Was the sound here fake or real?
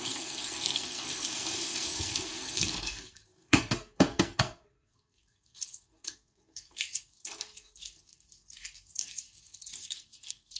fake